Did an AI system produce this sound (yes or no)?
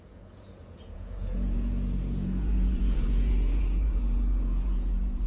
yes